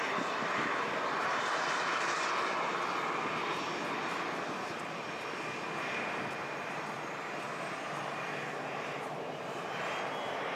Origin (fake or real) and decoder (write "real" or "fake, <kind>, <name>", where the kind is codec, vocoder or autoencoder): real